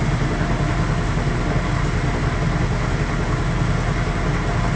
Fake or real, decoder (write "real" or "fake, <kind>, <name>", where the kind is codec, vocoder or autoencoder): real